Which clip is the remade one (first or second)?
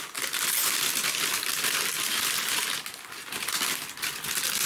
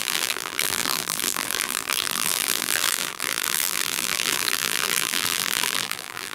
second